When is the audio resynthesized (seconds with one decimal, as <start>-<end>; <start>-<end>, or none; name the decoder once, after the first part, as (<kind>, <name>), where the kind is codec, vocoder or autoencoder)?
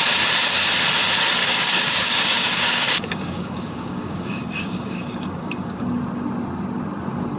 1.4-5.8 (codec, DAC)